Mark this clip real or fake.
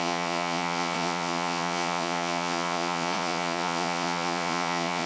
fake